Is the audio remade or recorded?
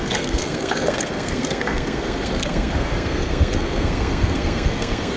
remade